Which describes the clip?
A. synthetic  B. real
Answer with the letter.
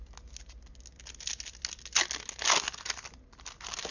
B